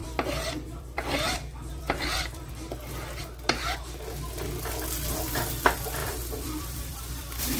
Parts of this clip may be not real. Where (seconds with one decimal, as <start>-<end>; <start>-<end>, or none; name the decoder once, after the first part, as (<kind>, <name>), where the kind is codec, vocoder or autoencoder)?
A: 0.0-2.5 (vocoder, BigVGAN v2); 6.0-7.6